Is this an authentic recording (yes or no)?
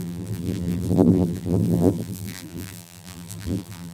no